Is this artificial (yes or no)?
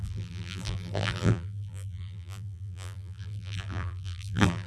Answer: yes